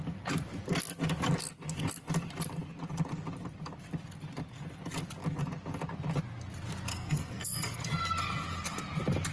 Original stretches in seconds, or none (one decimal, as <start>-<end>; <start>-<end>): 0.0-6.9; 7.8-9.3